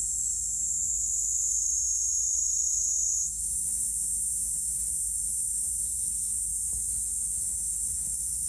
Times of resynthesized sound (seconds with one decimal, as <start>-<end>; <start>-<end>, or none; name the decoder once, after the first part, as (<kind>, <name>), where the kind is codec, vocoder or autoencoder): 0.0-6.5 (autoencoder, DAC-VAE); 7.4-8.5